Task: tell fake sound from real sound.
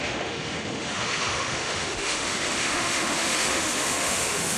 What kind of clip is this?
fake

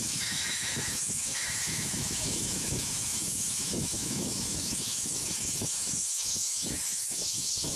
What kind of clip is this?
fake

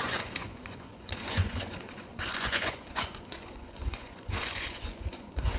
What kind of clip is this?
fake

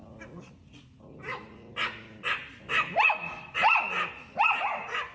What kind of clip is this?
real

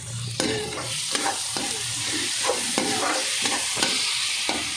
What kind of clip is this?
fake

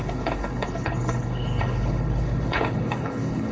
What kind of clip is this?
fake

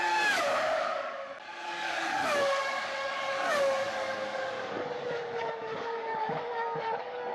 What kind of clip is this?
fake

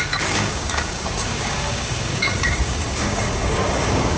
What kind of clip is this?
fake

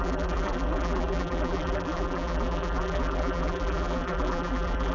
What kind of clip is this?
fake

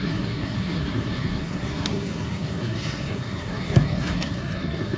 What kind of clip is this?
fake